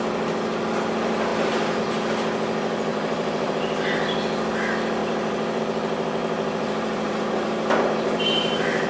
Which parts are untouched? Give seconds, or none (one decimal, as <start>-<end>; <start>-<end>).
0.0-1.3; 1.8-2.9; 3.5-5.0; 5.6-6.2